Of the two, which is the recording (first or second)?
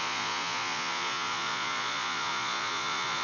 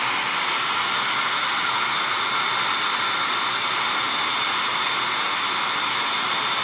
second